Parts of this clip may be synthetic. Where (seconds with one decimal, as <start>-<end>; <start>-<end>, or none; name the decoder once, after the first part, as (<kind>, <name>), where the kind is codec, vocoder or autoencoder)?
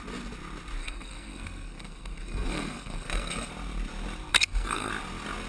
0.8-3.5 (codec, SNAC); 4.3-4.9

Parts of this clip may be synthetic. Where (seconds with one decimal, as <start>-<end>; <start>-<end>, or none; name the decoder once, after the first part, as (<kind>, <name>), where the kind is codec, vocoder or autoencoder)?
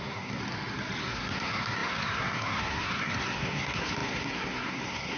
0.0-0.4 (codec, SNAC); 1.0-5.2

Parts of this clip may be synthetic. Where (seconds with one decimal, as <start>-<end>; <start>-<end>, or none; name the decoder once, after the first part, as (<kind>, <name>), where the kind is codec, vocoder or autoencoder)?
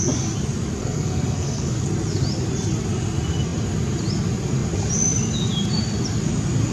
0.8-1.8 (codec, SNAC)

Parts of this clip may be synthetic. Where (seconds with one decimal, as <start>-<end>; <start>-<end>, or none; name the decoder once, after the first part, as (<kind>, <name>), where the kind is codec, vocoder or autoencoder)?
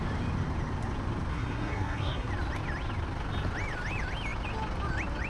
1.3-2.3 (codec, SNAC)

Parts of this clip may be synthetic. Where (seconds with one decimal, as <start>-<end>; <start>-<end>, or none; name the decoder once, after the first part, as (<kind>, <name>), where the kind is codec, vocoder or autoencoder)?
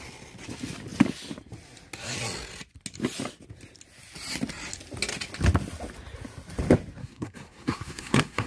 7.0-8.5 (codec, SNAC)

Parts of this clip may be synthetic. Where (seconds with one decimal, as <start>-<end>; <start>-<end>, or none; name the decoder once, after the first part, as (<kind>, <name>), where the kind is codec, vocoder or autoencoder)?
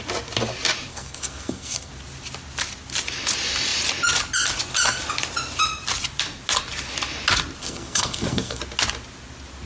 0.9-1.9 (codec, SNAC); 7.6-8.6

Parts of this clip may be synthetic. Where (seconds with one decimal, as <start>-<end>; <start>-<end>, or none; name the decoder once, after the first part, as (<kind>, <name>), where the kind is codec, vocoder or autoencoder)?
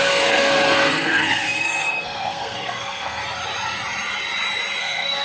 0.0-3.2 (codec, SNAC); 4.8-5.2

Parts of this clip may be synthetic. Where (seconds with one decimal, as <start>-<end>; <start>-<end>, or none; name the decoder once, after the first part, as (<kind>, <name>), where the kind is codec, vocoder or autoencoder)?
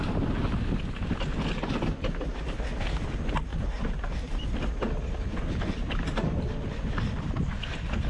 none